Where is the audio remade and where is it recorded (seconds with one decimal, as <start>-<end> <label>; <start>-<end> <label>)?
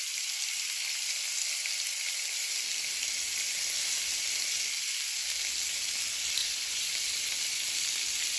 0.0-6.4 recorded; 6.4-6.9 remade; 6.9-8.4 recorded